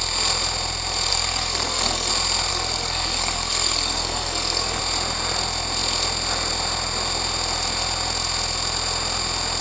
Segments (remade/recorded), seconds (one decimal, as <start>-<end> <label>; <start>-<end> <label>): 0.0-1.1 recorded; 1.1-2.1 remade; 2.1-2.5 recorded; 2.5-4.8 remade; 4.8-9.6 recorded